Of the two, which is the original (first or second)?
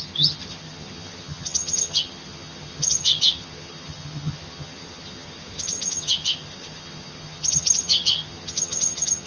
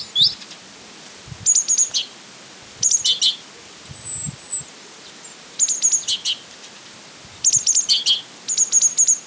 second